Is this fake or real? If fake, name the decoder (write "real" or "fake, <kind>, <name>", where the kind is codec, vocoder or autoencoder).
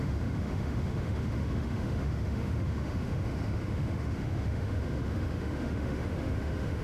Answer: fake, autoencoder, DAC-VAE